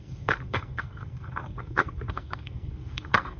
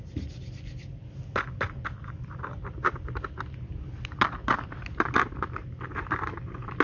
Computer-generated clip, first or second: first